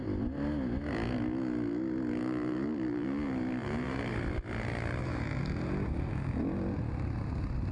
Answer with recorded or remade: recorded